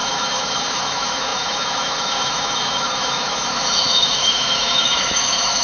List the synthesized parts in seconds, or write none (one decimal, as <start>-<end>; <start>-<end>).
0.0-5.6